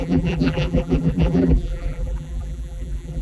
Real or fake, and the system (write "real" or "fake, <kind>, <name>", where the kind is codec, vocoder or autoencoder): fake, vocoder, BigVGAN v2